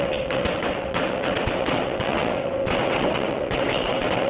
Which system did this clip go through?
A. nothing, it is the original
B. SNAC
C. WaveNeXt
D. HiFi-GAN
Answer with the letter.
C